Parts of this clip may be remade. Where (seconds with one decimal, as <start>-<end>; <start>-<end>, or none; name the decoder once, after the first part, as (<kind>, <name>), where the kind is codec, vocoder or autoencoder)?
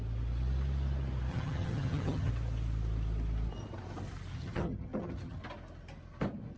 1.3-2.3 (vocoder, HiFi-GAN); 4.3-5.4